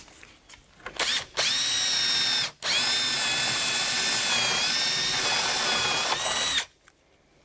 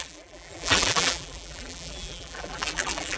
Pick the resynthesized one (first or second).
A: second